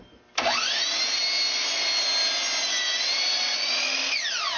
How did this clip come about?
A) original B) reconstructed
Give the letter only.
A